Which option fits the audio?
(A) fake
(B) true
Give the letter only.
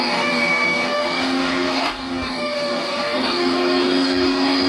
A